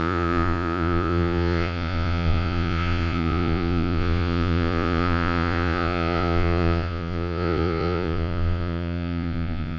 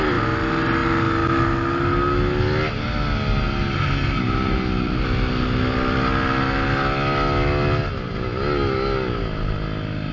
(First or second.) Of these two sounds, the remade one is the first